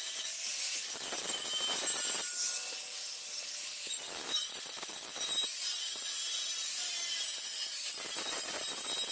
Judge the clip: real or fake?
real